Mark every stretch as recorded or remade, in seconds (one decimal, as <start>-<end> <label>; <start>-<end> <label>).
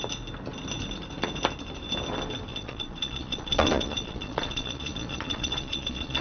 0.0-2.5 recorded; 2.5-6.2 remade